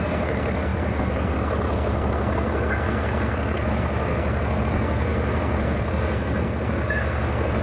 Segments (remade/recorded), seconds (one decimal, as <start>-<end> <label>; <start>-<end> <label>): 0.0-7.6 remade